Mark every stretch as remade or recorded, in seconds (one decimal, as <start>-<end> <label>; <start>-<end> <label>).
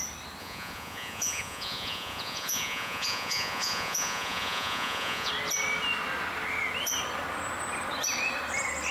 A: 0.0-0.4 recorded; 0.4-5.3 remade; 5.3-8.9 recorded